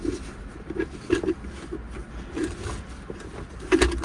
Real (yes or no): yes